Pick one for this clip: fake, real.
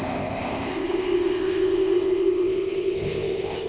fake